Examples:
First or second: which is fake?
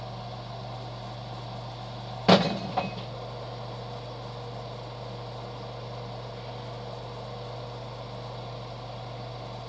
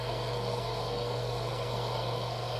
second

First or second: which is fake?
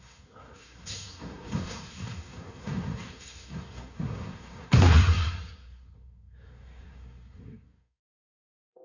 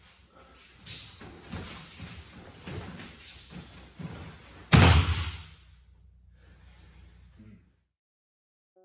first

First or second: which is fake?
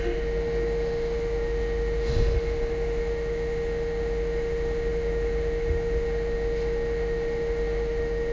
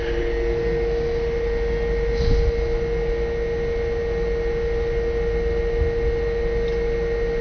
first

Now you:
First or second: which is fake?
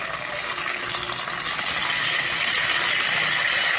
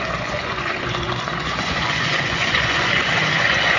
second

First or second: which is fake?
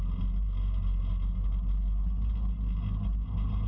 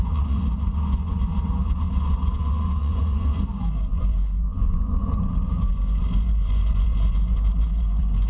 second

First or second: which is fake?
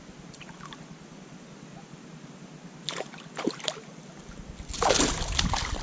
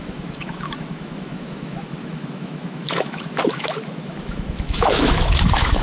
second